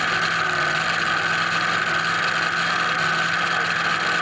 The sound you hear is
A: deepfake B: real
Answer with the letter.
B